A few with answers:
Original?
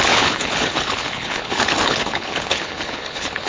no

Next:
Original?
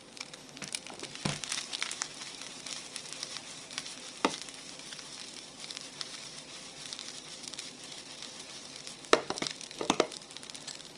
no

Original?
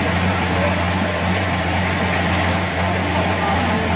yes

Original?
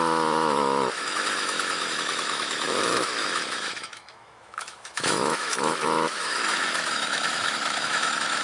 no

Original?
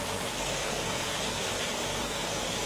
no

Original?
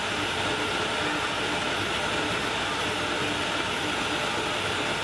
yes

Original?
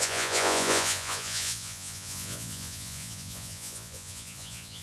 no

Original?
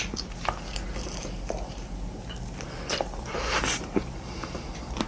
yes